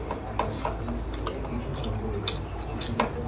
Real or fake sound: real